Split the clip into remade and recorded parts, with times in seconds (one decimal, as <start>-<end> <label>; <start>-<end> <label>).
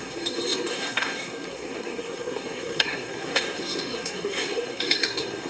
0.0-5.5 remade